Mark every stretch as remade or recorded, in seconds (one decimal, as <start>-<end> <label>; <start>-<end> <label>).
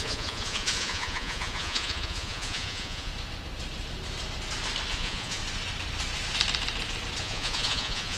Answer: 0.0-3.1 remade; 3.1-4.9 recorded; 4.9-5.4 remade; 5.4-7.2 recorded; 7.2-8.2 remade